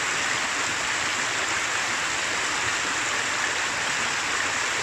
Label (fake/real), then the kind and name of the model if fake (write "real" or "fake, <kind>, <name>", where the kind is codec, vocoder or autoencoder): real